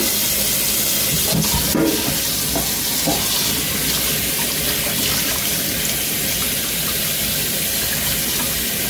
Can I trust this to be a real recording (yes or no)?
yes